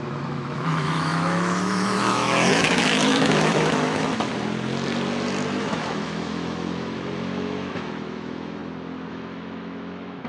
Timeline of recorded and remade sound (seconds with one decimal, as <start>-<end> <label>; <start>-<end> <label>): 0.0-4.3 remade; 4.3-5.6 recorded; 5.6-8.6 remade; 8.6-9.1 recorded; 9.1-10.3 remade